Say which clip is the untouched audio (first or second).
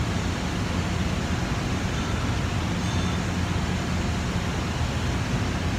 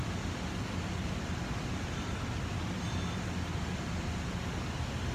first